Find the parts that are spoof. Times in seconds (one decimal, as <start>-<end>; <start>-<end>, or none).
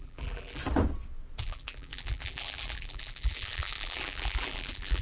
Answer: 0.0-0.6; 1.4-5.0